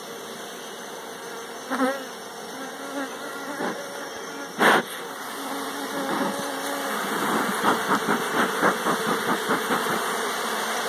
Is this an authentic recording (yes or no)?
yes